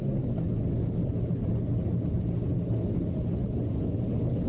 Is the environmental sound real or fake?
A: real